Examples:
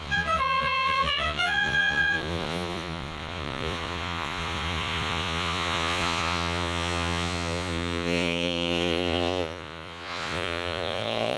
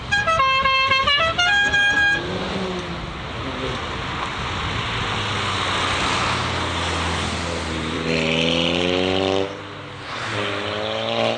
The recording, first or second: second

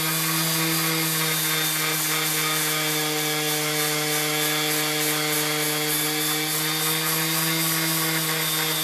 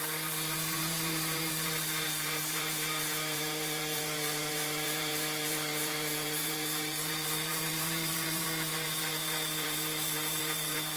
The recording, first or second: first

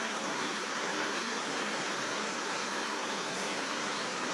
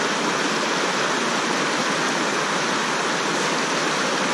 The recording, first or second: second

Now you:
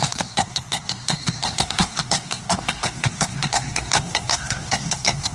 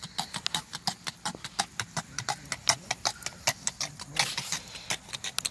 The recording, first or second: second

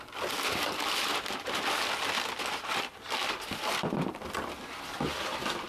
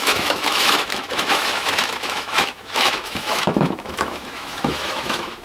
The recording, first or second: first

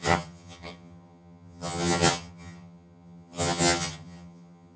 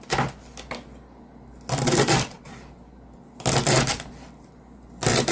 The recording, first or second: second